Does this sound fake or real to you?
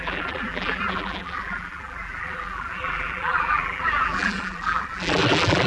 fake